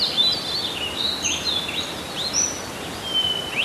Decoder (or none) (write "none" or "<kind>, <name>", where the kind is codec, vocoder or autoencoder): none